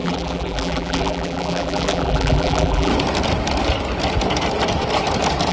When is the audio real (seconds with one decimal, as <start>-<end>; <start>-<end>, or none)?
2.9-5.5